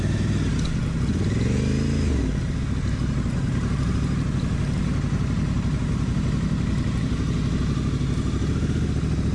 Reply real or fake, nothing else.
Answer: real